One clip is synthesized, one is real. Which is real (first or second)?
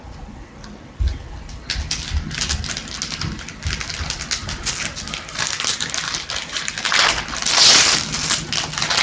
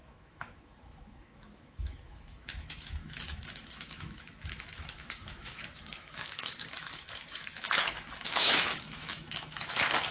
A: first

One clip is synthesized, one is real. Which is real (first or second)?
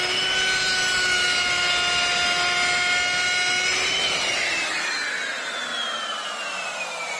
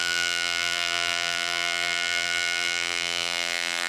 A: first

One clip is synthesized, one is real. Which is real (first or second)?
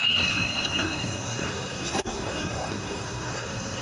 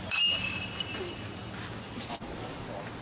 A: second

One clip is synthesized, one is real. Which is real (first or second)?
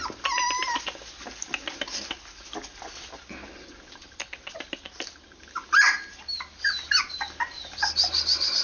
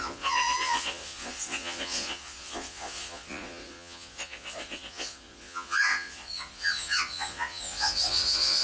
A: first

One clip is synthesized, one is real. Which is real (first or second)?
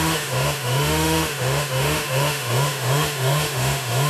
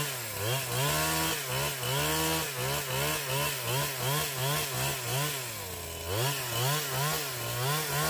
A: second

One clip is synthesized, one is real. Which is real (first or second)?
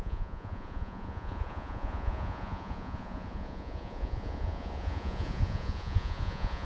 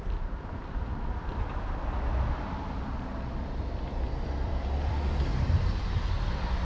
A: second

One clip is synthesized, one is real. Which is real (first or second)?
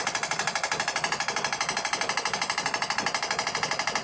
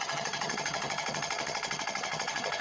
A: first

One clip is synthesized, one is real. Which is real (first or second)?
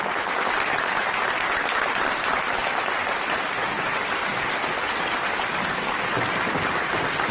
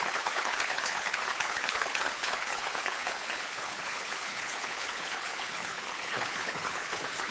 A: first